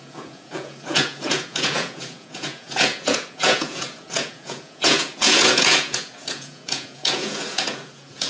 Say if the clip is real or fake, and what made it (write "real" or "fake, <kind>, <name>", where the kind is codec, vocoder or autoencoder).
fake, vocoder, Vocos